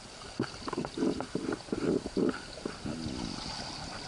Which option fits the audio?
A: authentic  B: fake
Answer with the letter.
A